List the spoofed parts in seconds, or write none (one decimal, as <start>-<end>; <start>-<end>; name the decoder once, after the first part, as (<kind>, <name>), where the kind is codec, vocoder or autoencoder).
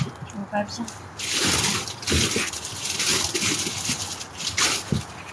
none